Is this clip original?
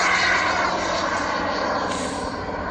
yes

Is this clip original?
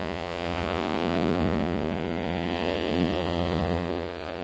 no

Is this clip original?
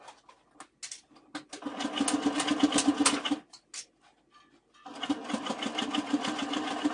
yes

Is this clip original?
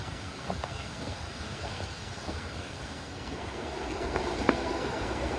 no